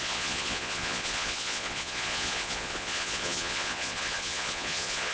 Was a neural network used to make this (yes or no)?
yes